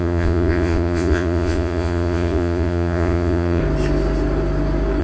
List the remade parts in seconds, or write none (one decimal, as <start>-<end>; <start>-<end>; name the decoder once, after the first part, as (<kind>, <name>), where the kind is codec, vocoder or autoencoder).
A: 0.0-3.6 (vocoder, Vocos)